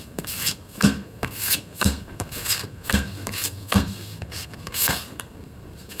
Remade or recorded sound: remade